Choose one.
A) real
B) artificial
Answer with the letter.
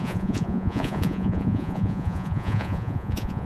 B